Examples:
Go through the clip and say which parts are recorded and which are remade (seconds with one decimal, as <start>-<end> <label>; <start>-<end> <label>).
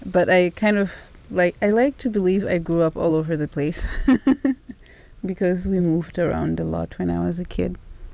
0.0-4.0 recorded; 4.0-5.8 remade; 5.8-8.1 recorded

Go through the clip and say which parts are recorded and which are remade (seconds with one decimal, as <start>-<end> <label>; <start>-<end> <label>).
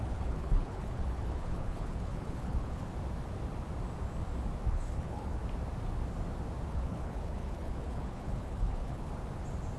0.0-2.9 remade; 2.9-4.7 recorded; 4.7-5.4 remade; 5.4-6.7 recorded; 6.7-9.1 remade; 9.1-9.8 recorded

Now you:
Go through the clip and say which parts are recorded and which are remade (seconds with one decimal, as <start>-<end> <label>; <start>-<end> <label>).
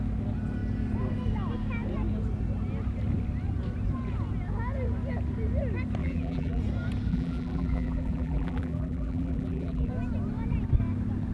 0.0-6.0 recorded; 6.0-6.6 remade; 6.6-7.1 recorded; 7.1-9.9 remade; 9.9-11.3 recorded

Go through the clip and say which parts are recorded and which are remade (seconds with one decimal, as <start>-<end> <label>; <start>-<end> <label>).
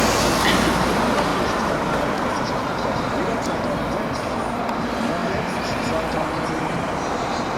0.0-1.3 recorded; 1.3-3.1 remade; 3.1-7.6 recorded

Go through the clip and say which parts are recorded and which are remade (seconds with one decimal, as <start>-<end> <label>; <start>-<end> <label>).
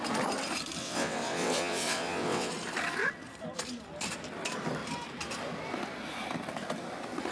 0.0-0.8 recorded; 0.8-2.5 remade; 2.5-7.3 recorded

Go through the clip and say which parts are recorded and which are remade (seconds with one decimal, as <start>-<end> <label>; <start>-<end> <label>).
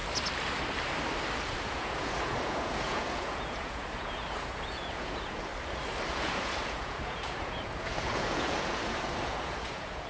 0.0-1.6 recorded; 1.6-5.5 remade; 5.5-6.1 recorded; 6.1-10.1 remade